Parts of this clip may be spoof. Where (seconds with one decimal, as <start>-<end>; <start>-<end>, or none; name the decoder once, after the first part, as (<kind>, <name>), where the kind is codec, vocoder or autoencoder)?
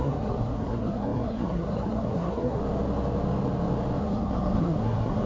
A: 0.0-2.6 (codec, SNAC); 4.0-5.3